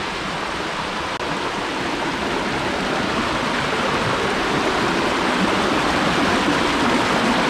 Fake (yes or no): no